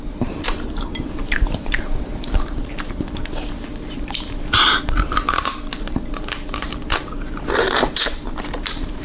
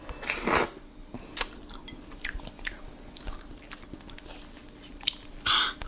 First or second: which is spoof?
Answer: first